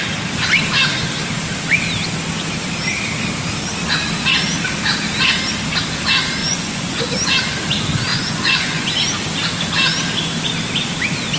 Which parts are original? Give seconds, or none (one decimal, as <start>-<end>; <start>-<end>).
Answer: 0.0-6.4; 7.0-8.1; 8.9-11.4